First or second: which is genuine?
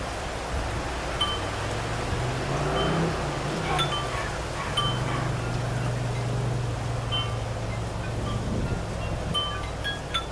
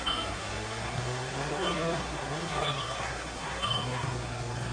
first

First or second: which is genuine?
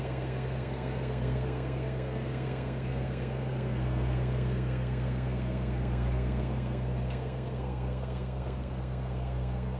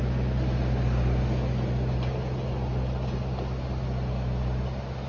second